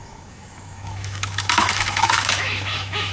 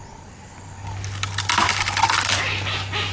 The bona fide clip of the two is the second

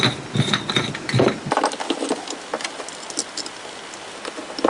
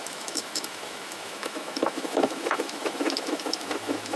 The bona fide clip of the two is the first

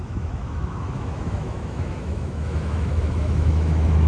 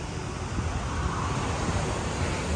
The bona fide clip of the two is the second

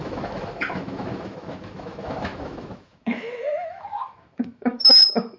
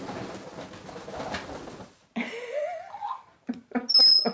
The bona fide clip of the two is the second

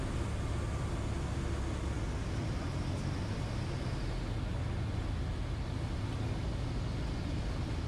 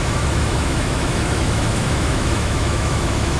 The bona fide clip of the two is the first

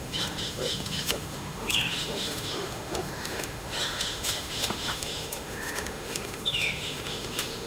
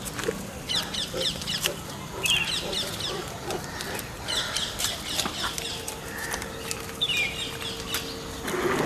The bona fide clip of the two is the second